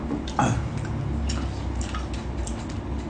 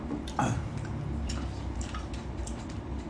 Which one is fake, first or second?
second